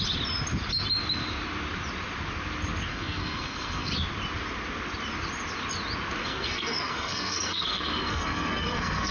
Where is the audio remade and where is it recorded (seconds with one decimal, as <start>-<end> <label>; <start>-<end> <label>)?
0.0-2.9 recorded; 2.9-3.9 remade; 3.9-6.2 recorded; 6.2-9.1 remade